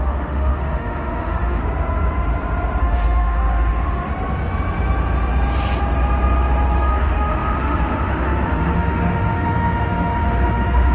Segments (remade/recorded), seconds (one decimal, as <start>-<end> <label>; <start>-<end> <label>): 0.0-1.6 remade; 1.6-2.8 recorded; 2.8-4.1 remade; 4.1-6.9 recorded; 6.9-10.9 remade